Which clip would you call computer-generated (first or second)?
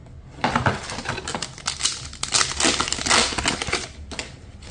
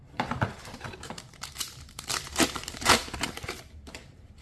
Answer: second